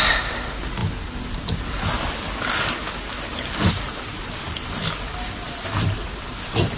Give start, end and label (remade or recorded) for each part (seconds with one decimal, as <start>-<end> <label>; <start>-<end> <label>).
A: 0.0-6.8 recorded